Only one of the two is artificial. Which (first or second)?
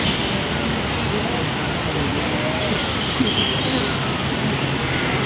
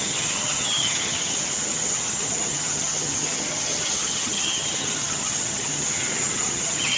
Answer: second